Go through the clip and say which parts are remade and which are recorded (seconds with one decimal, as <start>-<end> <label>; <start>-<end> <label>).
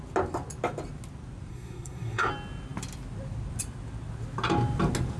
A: 0.0-1.5 recorded; 1.5-2.3 remade; 2.3-5.2 recorded